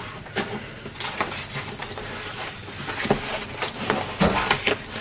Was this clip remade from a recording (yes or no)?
no